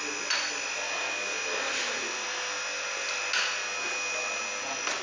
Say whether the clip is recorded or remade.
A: recorded